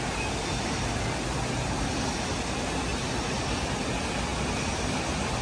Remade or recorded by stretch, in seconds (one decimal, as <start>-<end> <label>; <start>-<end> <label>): 0.0-4.3 recorded; 4.3-5.4 remade